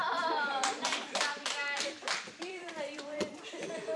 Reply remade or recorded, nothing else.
remade